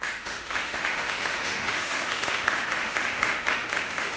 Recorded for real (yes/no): no